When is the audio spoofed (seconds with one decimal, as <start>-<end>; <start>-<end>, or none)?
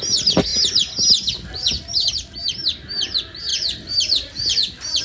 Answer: none